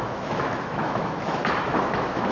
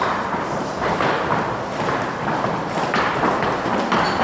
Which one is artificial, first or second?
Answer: first